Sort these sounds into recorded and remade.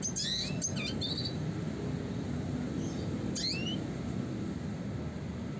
recorded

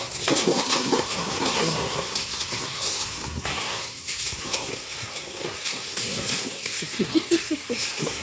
remade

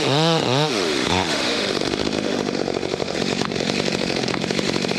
remade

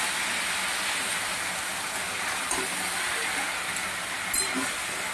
recorded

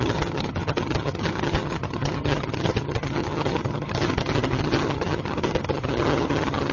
remade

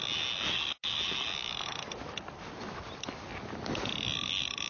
recorded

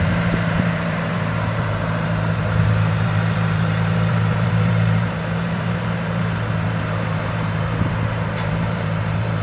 remade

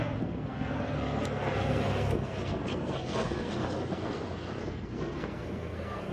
remade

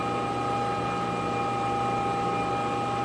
recorded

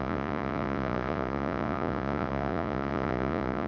remade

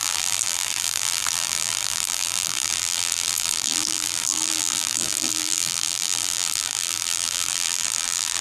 remade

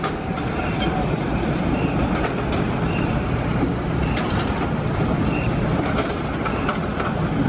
remade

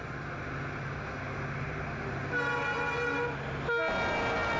recorded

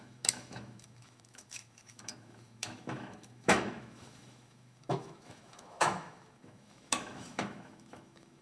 remade